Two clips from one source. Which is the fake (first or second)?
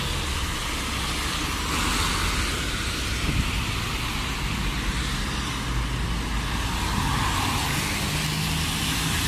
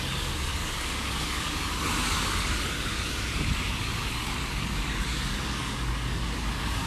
second